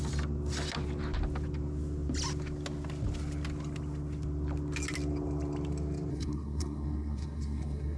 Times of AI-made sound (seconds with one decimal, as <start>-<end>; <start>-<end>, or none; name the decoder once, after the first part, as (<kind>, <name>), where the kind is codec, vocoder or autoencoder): 6.1-8.0 (codec, SNAC)